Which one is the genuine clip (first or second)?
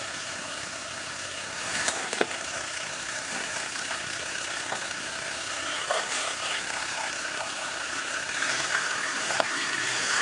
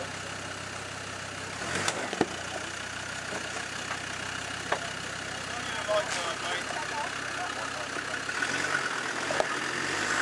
second